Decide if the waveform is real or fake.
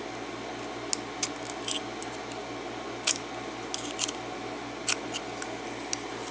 real